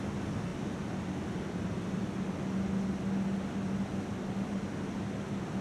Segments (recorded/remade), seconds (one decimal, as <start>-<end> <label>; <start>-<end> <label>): 0.0-5.6 recorded

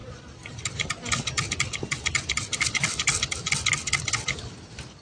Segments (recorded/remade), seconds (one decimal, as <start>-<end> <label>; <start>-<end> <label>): 0.0-5.0 recorded

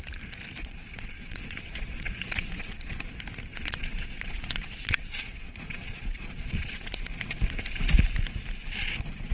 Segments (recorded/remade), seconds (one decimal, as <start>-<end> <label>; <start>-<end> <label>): 0.0-0.6 recorded; 0.6-3.0 remade; 3.0-3.5 recorded; 3.5-6.9 remade; 6.9-9.3 recorded

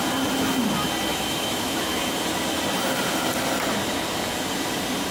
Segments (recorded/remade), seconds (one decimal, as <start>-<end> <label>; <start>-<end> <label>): 0.0-1.1 recorded; 1.1-2.0 remade; 2.0-5.1 recorded

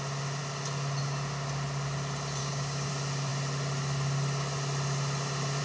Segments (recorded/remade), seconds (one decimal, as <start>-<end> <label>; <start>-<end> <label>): 0.0-2.4 recorded; 2.4-2.9 remade; 2.9-5.6 recorded